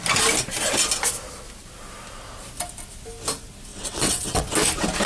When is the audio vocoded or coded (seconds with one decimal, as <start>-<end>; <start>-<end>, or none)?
3.7-4.4